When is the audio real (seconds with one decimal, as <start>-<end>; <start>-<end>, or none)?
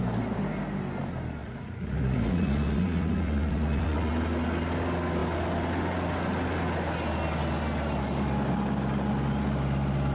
0.0-1.4; 4.1-10.1